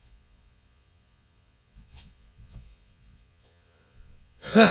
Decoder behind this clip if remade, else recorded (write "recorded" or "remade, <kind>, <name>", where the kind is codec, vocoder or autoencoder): remade, vocoder, Vocos